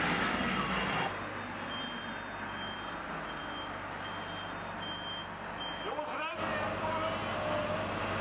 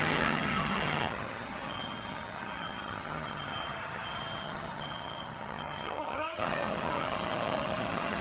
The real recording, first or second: first